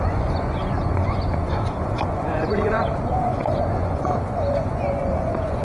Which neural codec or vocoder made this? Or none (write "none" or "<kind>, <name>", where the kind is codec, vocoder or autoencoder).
vocoder, Vocos